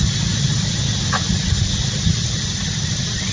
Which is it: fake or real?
real